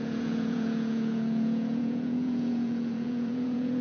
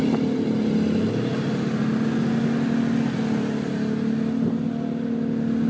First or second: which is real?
second